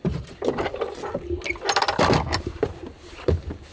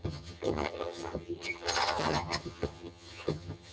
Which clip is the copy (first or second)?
second